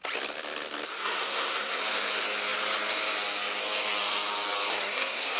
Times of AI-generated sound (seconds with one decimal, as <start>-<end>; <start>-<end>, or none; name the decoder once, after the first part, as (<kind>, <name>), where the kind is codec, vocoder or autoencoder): 0.9-1.8 (codec, SNAC); 4.7-5.4